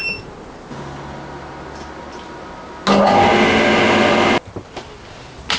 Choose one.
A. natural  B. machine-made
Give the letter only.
A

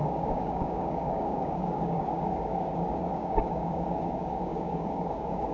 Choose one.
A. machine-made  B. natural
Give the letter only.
A